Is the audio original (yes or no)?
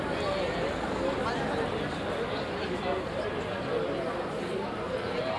yes